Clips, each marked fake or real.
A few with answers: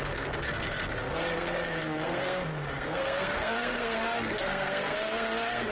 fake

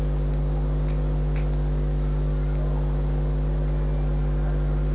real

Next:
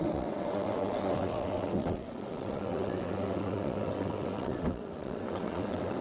fake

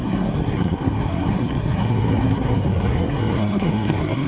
fake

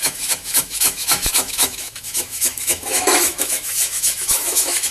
fake